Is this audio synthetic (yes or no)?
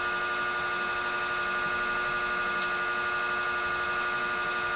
no